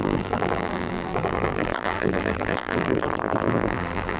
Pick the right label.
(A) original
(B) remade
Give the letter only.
B